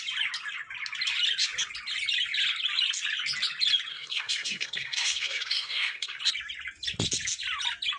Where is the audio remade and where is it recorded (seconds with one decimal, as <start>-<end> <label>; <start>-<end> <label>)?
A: 0.0-3.9 recorded; 3.9-6.2 remade; 6.2-8.0 recorded